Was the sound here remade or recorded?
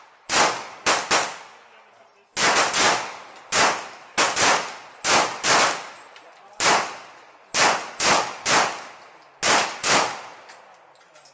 recorded